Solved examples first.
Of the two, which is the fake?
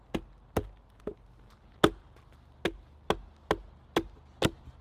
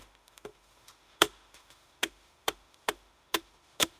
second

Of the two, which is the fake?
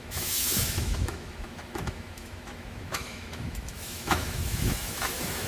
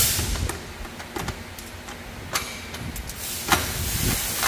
first